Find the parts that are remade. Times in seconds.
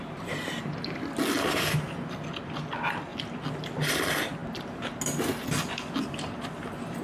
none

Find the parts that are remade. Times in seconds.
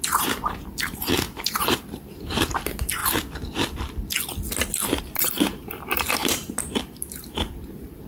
0.0-3.0 (vocoder, BigVGAN v2); 5.0-8.1